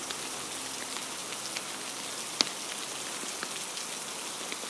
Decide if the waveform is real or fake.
real